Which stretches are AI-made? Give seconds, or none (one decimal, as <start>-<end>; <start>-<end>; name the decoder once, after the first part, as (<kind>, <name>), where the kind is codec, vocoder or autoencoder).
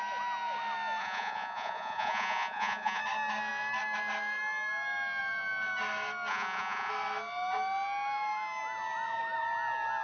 1.0-3.0 (vocoder, Vocos); 6.3-6.9